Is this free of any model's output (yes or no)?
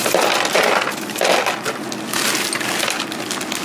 yes